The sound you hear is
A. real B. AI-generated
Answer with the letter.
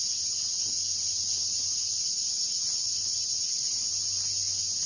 A